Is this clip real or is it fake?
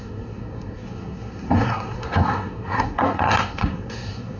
fake